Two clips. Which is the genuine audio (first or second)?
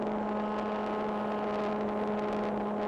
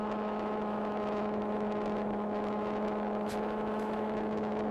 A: first